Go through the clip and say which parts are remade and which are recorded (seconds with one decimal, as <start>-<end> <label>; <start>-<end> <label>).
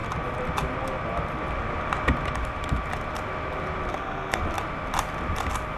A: 0.0-3.9 recorded; 3.9-4.4 remade; 4.4-5.8 recorded